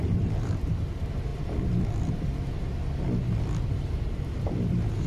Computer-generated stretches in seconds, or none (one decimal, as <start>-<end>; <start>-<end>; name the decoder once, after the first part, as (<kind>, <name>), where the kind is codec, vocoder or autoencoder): 0.0-1.3 (vocoder, BigVGAN v2); 4.4-5.1